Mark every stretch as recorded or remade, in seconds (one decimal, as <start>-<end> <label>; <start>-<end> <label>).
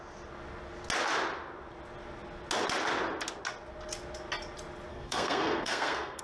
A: 0.0-4.9 recorded; 4.9-6.2 remade